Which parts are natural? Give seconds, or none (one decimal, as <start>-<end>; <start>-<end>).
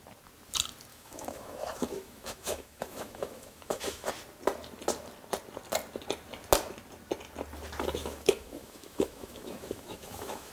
0.0-0.9; 4.1-8.0